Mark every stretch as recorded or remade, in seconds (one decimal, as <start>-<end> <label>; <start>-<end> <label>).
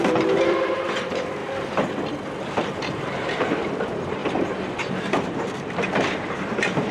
0.0-1.4 remade; 1.4-2.4 recorded; 2.4-6.9 remade